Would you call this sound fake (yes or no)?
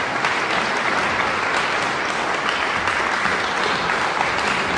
no